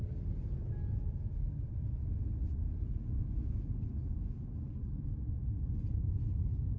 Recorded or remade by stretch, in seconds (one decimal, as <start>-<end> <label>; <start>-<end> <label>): 0.0-1.6 recorded; 1.6-2.9 remade; 2.9-6.8 recorded

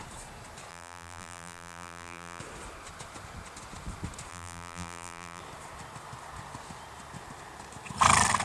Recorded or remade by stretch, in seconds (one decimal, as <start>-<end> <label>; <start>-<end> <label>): 0.0-0.7 recorded; 0.7-2.4 remade; 2.4-4.3 recorded; 4.3-5.4 remade; 5.4-8.4 recorded

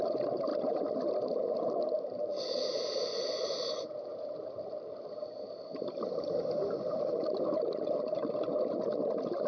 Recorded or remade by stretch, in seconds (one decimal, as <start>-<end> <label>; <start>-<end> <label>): 0.0-2.3 recorded; 2.3-4.3 remade; 4.3-9.5 recorded

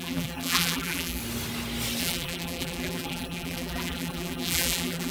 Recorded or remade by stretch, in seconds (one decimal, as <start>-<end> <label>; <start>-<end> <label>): 0.0-1.2 remade; 1.2-2.0 recorded; 2.0-5.1 remade